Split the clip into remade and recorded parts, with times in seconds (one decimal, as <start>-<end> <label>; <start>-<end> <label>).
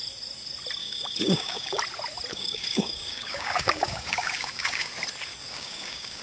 0.0-0.8 recorded; 0.8-1.8 remade; 1.8-2.3 recorded; 2.3-4.9 remade; 4.9-5.4 recorded; 5.4-6.2 remade